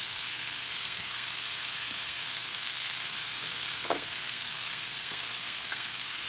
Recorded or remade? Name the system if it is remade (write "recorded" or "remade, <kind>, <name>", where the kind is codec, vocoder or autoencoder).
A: remade, codec, SNAC